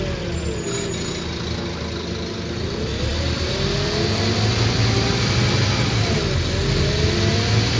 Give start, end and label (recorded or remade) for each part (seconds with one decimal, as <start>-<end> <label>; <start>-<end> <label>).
0.0-7.8 recorded